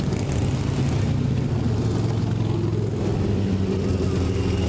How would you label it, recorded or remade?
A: recorded